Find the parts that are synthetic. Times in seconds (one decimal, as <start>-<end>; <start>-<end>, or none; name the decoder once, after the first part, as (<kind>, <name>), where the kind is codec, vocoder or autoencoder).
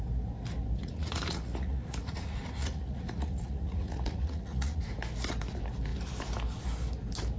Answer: 0.8-4.8 (vocoder, Vocos)